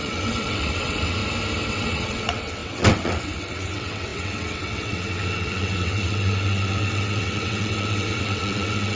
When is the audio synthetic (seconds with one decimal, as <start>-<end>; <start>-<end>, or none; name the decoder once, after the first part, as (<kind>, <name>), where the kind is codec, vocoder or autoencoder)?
0.0-1.2 (vocoder, WaveNeXt); 1.7-9.0